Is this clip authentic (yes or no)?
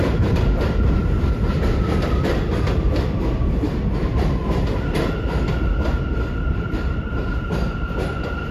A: yes